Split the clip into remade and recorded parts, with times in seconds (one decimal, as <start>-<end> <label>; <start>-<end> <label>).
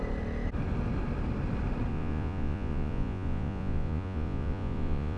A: 0.0-1.9 recorded; 1.9-5.2 remade